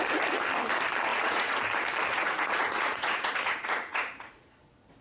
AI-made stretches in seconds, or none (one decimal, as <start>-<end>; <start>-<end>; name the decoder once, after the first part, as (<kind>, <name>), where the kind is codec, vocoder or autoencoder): 1.1-1.6 (vocoder, Vocos); 2.1-4.6